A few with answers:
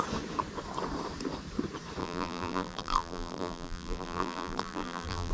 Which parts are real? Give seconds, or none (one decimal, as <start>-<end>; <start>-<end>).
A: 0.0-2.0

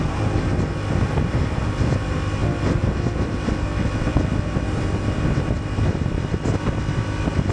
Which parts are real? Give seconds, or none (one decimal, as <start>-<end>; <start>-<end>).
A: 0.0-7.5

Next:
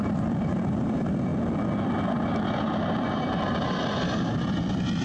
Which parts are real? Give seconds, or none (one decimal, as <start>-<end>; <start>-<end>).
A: 1.3-1.9

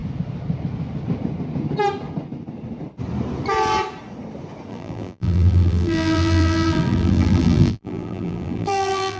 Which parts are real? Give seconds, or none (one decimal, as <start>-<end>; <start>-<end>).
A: 0.0-4.7

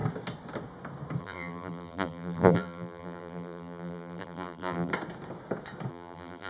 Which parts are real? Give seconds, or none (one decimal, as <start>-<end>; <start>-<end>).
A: 0.0-1.2; 4.9-5.9